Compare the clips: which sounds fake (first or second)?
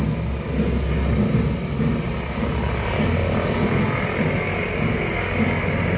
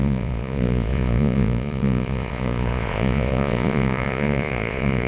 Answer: second